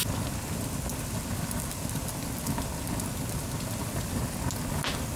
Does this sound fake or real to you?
real